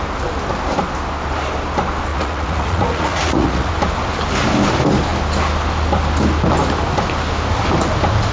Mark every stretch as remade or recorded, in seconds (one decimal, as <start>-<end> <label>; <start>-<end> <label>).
0.0-2.1 recorded; 2.1-3.7 remade; 3.7-8.3 recorded